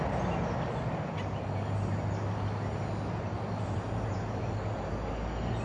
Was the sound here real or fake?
real